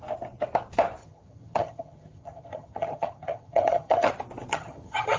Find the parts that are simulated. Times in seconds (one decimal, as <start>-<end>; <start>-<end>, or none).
1.0-4.1; 4.5-5.2